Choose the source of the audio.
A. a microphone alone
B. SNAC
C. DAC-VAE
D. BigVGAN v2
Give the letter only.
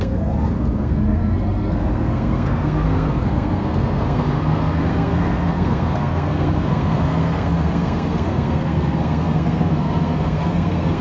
B